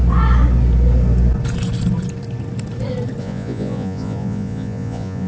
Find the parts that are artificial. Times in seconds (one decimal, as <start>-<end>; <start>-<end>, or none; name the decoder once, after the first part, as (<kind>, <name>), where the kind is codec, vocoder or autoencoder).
3.2-5.3 (vocoder, Vocos)